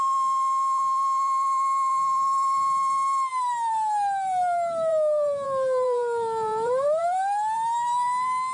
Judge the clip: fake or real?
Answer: fake